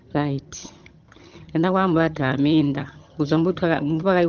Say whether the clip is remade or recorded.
remade